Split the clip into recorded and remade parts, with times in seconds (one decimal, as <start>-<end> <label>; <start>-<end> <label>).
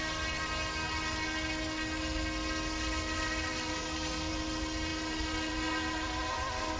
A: 0.0-3.7 recorded; 3.7-4.3 remade; 4.3-6.8 recorded